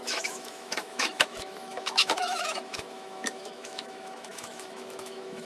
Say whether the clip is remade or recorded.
remade